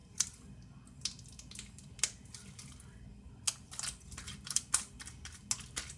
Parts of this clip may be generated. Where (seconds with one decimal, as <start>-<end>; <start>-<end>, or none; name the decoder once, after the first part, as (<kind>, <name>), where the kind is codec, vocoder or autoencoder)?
none